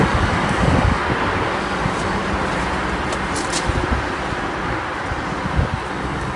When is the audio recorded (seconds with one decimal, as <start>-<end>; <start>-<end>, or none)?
1.0-1.6; 2.2-5.9